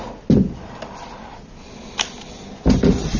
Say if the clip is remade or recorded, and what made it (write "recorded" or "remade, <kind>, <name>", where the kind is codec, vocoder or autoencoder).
recorded